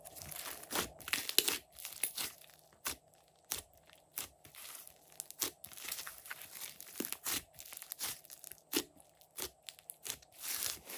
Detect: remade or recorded recorded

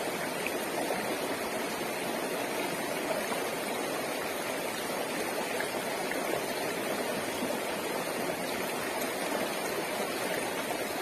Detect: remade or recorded recorded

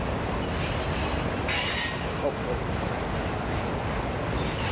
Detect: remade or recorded recorded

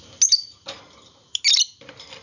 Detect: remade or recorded recorded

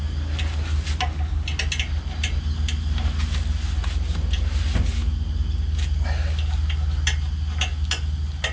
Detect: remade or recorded recorded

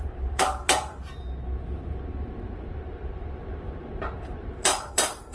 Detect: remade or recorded remade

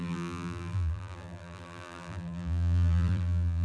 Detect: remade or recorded remade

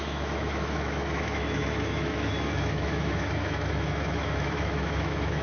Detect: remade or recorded remade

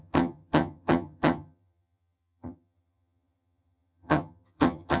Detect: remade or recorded remade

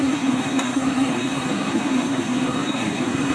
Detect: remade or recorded remade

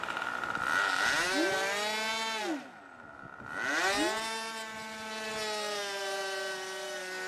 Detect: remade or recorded recorded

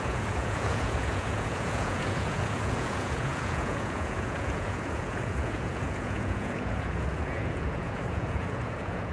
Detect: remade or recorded remade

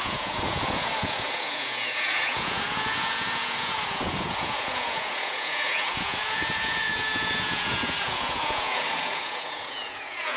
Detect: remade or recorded remade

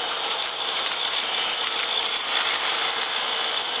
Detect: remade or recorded recorded